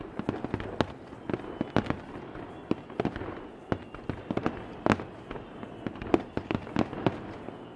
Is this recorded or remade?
recorded